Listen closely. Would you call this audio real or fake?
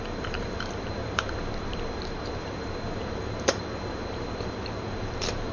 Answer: fake